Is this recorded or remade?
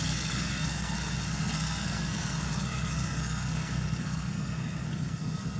remade